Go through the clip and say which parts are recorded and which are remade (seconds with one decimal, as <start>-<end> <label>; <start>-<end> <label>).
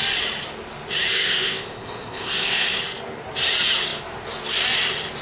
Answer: 0.0-1.1 recorded; 1.1-2.8 remade; 2.8-5.2 recorded